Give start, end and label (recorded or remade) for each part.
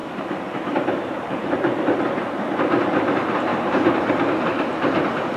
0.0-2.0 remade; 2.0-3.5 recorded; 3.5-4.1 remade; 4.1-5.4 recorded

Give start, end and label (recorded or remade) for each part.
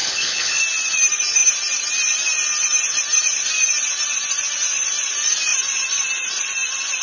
0.0-0.6 remade; 0.6-7.0 recorded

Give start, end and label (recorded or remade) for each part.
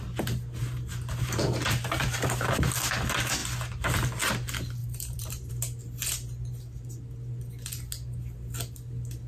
0.0-0.6 recorded; 0.6-2.0 remade; 2.0-4.8 recorded; 4.8-5.5 remade; 5.5-9.3 recorded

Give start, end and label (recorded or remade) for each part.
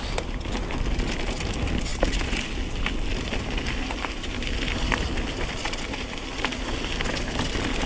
0.0-7.9 recorded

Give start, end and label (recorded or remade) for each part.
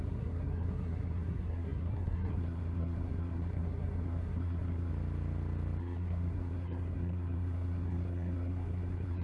0.0-4.9 remade; 4.9-5.8 recorded; 5.8-9.2 remade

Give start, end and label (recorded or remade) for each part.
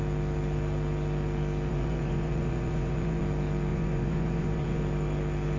0.0-1.7 recorded; 1.7-3.2 remade; 3.2-3.7 recorded; 3.7-4.8 remade; 4.8-5.6 recorded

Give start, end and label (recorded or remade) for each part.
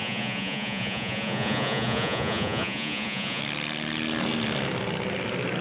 0.0-3.4 remade; 3.4-5.6 recorded